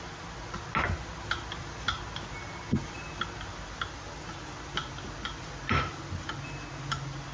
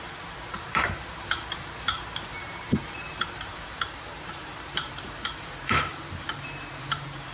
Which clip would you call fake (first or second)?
second